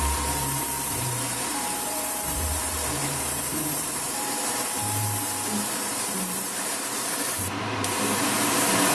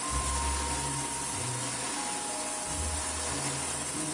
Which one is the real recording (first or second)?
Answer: second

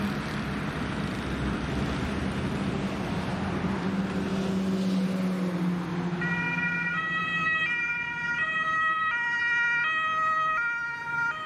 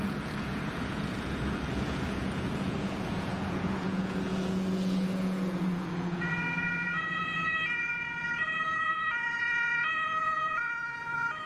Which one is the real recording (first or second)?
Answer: first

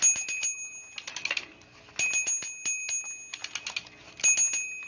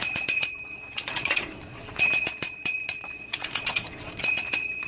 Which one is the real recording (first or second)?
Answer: first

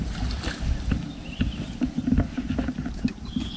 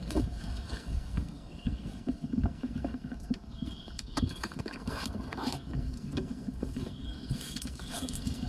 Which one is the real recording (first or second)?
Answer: first